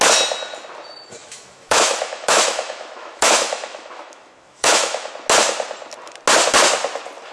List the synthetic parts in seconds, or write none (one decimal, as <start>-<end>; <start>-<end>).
1.2-5.1